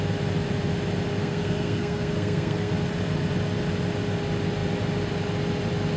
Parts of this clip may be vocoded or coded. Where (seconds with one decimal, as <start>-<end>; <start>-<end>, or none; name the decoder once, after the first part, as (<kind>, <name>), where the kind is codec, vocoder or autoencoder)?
1.2-2.7 (codec, SNAC)